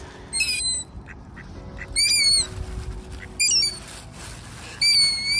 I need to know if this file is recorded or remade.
recorded